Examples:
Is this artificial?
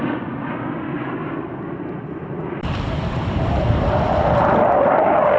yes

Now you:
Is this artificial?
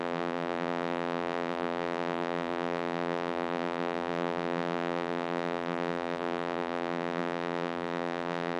yes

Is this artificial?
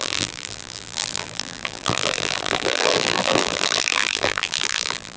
yes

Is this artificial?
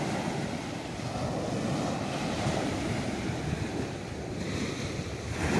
yes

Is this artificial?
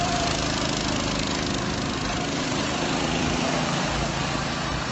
yes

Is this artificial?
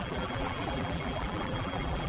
yes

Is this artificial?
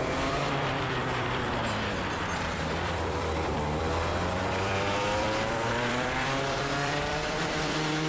yes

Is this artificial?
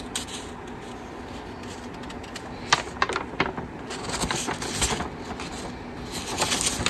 no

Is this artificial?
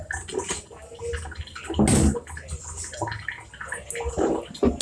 no